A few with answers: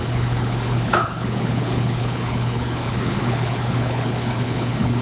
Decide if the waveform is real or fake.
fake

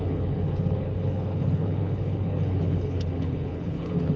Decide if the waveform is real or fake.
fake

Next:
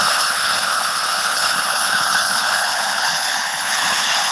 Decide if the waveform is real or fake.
fake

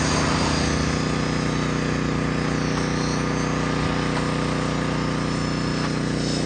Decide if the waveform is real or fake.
real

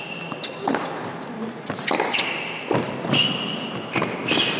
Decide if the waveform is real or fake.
real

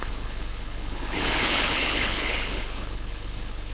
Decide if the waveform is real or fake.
fake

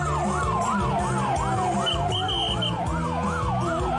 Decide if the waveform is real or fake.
real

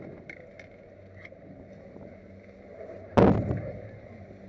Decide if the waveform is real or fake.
real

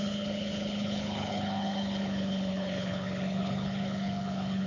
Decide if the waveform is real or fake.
fake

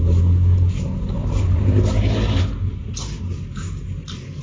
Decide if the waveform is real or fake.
real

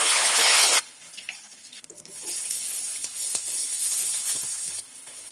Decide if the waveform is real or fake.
fake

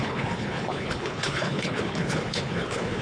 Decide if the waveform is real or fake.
fake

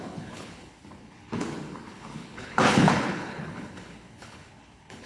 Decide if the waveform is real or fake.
fake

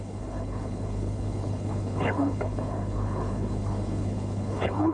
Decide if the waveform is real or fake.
fake